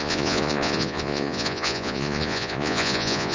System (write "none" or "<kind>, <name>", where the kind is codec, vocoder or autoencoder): vocoder, Vocos